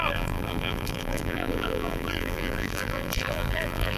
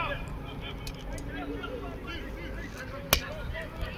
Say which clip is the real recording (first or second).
second